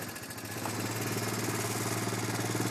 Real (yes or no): yes